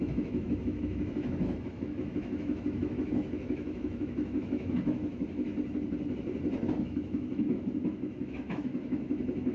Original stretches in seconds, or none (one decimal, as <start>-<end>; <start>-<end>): 5.5-6.8